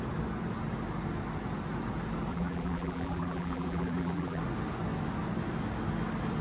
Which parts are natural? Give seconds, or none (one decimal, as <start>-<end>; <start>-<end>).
0.0-2.3; 4.4-6.4